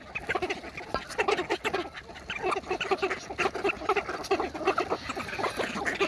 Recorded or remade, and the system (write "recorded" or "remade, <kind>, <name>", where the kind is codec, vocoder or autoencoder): recorded